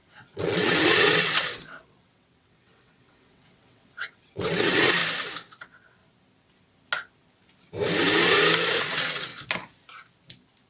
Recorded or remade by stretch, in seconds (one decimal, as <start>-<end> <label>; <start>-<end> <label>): 0.0-5.0 remade; 5.0-5.5 recorded; 5.5-6.0 remade; 6.0-8.8 recorded; 8.8-9.3 remade; 9.3-10.7 recorded